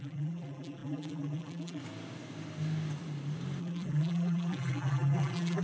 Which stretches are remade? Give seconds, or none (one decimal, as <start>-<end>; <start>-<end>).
0.0-1.8; 3.6-5.6